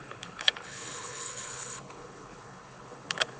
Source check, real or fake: fake